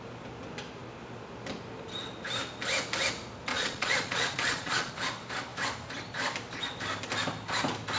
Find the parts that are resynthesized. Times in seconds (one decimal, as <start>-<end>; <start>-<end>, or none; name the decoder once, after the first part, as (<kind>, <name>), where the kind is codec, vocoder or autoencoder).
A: 3.5-4.9 (vocoder, Vocos)